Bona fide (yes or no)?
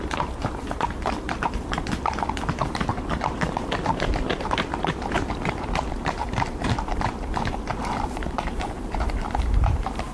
no